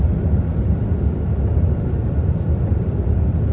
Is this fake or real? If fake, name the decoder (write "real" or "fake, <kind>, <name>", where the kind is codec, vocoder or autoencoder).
real